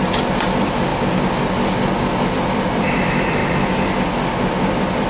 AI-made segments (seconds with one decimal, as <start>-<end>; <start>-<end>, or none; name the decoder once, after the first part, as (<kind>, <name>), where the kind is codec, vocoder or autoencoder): 0.0-0.9 (vocoder, BigVGAN v2); 2.3-5.1